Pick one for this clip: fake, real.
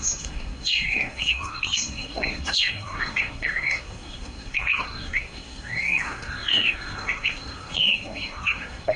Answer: fake